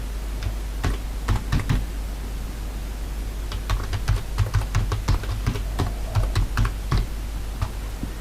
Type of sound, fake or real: real